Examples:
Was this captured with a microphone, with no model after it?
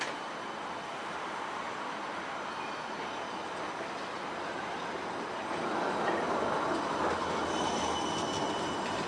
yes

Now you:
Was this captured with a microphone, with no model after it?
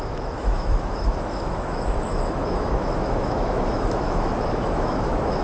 no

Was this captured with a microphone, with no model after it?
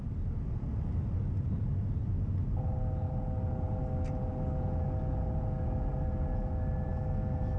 yes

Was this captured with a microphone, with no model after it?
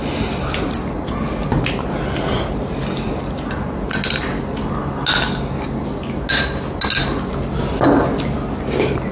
yes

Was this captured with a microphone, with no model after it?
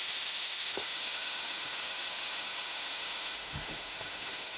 no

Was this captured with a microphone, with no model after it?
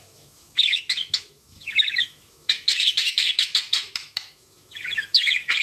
no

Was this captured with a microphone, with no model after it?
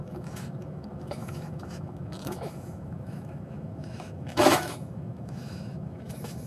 no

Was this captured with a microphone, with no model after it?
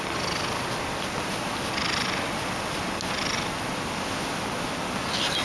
yes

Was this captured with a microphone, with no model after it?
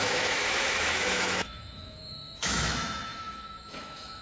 no